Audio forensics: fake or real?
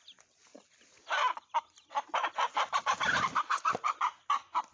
real